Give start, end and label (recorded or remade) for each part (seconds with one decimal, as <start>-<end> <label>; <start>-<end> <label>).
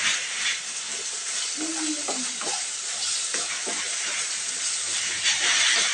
0.0-0.9 remade; 0.9-4.4 recorded; 4.4-5.9 remade